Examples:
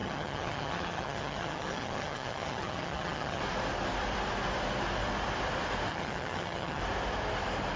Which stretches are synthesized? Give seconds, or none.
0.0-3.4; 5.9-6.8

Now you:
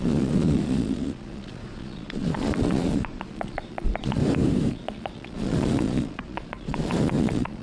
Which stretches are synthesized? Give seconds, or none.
0.0-4.2; 4.7-7.6